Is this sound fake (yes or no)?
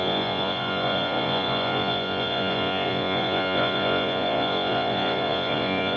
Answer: yes